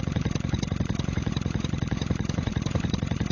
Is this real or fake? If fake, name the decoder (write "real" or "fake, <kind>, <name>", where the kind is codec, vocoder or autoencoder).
fake, vocoder, Vocos